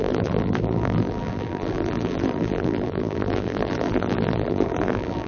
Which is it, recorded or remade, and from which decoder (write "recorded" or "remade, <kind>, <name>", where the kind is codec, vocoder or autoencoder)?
remade, vocoder, BigVGAN v2